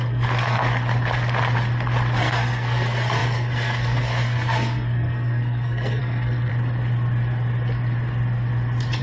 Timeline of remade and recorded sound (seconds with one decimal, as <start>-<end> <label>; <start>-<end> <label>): 0.0-0.6 remade; 0.6-2.2 recorded; 2.2-6.5 remade; 6.5-9.0 recorded